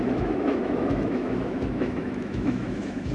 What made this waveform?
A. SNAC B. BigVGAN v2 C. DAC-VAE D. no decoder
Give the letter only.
C